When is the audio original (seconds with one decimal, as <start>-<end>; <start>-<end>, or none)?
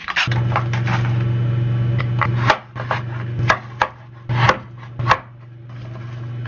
0.0-6.5